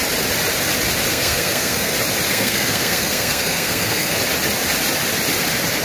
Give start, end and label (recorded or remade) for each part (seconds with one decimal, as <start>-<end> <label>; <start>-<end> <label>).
0.0-1.1 recorded; 1.1-1.9 remade; 1.9-2.3 recorded; 2.3-4.2 remade; 4.2-5.8 recorded